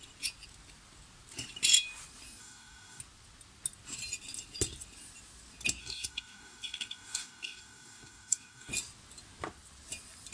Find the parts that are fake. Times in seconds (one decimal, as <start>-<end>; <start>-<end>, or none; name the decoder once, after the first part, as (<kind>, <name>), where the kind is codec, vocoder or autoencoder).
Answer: 2.4-3.0 (codec, DAC); 5.8-8.7